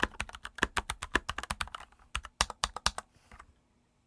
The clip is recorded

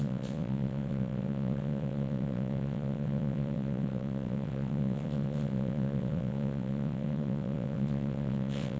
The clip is remade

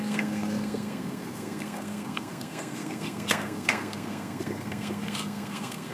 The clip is remade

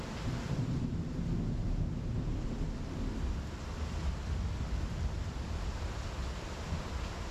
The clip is recorded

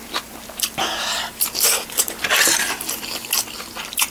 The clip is remade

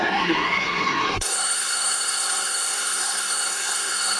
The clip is remade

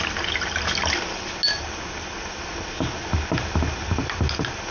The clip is recorded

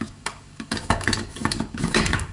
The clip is remade